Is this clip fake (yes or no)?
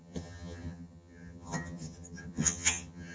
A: yes